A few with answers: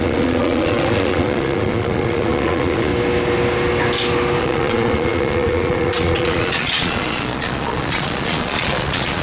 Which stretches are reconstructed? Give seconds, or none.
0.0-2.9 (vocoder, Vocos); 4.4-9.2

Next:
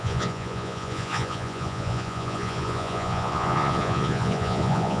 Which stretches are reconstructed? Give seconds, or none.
0.0-5.0 (vocoder, Vocos)

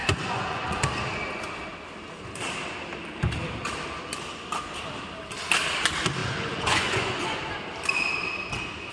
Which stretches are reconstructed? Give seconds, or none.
0.0-0.8 (vocoder, Vocos); 6.2-7.5

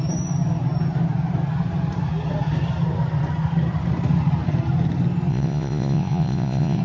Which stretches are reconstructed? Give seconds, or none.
5.3-6.8 (vocoder, Vocos)

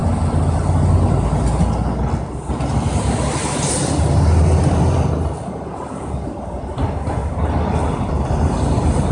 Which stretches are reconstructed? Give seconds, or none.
none

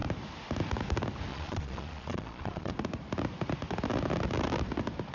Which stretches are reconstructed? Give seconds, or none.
1.3-2.7 (vocoder, Vocos)